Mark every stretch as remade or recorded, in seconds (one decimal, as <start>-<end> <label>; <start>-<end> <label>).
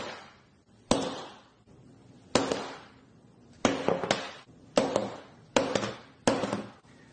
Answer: 0.0-7.1 recorded